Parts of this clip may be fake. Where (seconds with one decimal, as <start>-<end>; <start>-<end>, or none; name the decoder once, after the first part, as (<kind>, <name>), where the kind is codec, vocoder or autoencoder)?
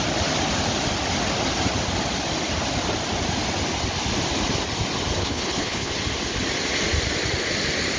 5.2-5.9 (codec, HILCodec)